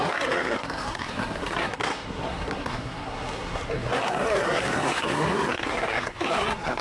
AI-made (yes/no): yes